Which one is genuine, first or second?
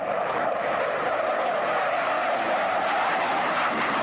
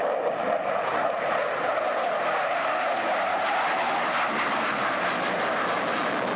second